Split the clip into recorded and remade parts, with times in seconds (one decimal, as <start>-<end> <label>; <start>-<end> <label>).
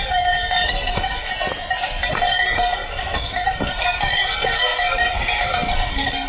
0.0-1.3 remade; 1.3-2.1 recorded; 2.1-6.3 remade